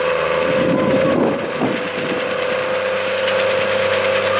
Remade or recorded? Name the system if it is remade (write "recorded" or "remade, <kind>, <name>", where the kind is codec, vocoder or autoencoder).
recorded